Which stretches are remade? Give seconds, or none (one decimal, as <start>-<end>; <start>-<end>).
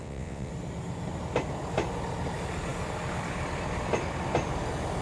0.0-0.5